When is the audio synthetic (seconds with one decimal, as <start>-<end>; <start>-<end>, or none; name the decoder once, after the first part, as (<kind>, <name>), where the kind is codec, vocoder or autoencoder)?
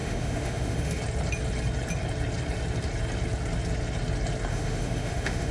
0.0-1.0 (autoencoder, DAC-VAE); 4.5-5.5